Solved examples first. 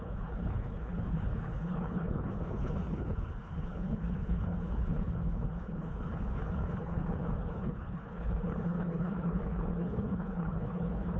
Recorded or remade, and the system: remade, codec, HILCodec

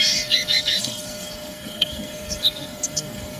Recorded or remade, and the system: remade, codec, SNAC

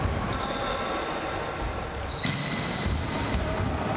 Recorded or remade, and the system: recorded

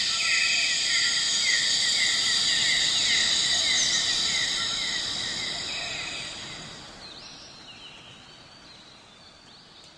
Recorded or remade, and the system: recorded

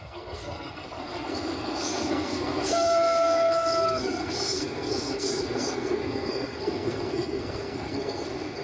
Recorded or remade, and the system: remade, codec, SNAC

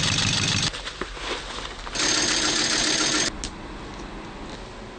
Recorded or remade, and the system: recorded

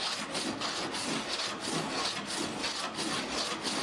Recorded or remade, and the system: recorded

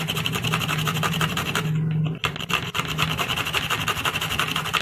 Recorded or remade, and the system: recorded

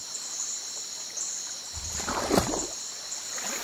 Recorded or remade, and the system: recorded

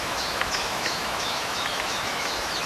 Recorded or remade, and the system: remade, autoencoder, DAC-VAE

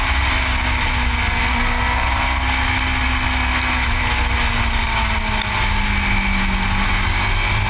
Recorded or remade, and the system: recorded